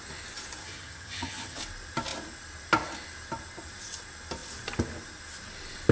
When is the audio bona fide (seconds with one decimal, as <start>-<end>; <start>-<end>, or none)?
0.0-0.6; 1.6-5.9